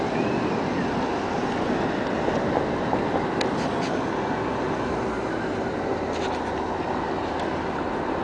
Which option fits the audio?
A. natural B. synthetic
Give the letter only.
A